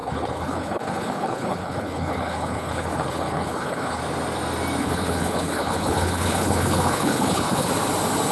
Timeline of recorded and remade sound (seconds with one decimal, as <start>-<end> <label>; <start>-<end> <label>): 0.0-4.0 remade; 4.0-4.8 recorded; 4.8-7.7 remade; 7.7-8.3 recorded